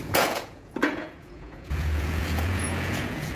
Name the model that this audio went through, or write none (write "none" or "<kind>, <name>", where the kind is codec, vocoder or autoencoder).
vocoder, Vocos